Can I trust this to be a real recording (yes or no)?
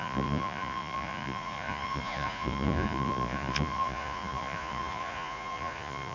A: no